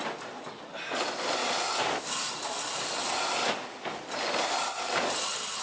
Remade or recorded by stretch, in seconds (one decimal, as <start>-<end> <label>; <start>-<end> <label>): 0.0-5.6 recorded